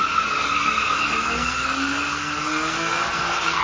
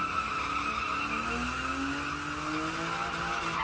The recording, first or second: second